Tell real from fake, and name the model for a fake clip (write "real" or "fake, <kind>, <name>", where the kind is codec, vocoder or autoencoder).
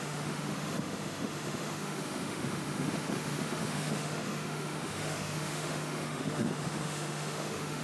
fake, autoencoder, DAC-VAE